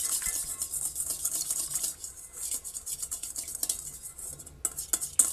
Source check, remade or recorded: recorded